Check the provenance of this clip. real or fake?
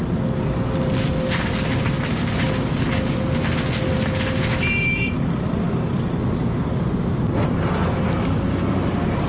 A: real